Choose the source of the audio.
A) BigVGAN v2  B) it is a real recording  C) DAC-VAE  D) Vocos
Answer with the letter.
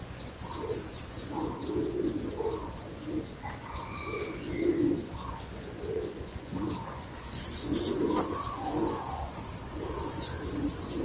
D